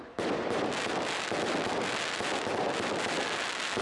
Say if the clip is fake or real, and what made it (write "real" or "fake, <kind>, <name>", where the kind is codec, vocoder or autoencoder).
real